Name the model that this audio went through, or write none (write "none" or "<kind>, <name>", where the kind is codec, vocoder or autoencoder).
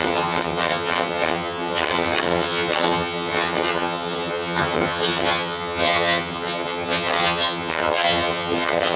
vocoder, HiFi-GAN